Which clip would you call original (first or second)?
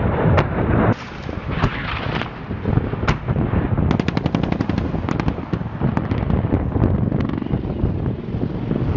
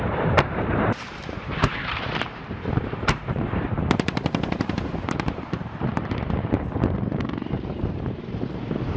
first